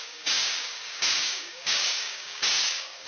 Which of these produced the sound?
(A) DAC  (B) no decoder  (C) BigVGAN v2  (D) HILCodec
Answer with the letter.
A